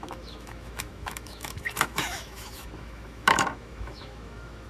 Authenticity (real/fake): fake